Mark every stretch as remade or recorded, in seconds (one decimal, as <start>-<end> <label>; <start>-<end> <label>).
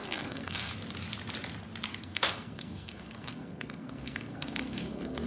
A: 0.0-0.7 remade; 0.7-1.9 recorded; 1.9-5.3 remade